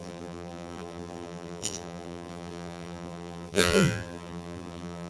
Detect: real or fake fake